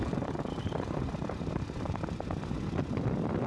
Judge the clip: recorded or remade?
recorded